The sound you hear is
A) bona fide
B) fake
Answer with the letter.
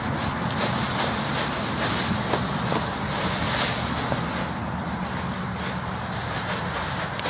A